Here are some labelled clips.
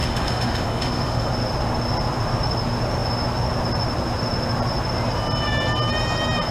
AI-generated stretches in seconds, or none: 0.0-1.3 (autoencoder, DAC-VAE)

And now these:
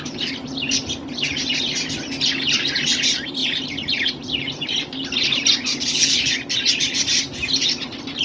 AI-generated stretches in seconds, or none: 3.4-4.8 (vocoder, BigVGAN v2)